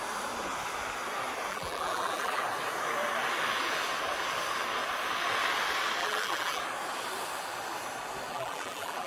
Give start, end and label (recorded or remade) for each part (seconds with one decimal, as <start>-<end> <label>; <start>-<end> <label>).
0.0-1.5 recorded; 1.5-2.4 remade; 2.4-6.0 recorded; 6.0-6.6 remade; 6.6-8.3 recorded; 8.3-9.1 remade